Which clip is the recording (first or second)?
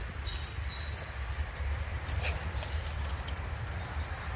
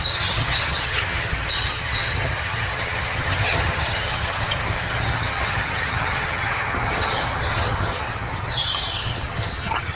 first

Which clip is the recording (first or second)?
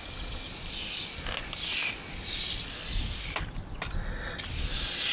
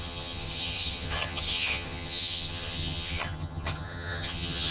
first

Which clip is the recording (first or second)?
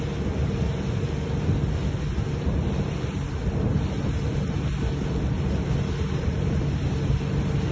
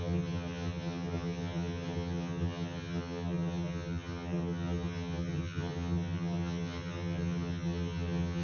first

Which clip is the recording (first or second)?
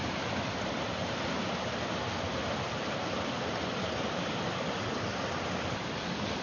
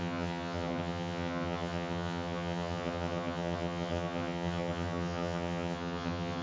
first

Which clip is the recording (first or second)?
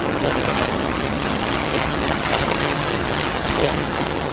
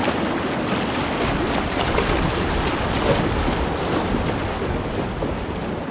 second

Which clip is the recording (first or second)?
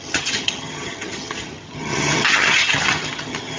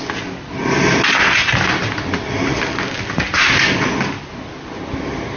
second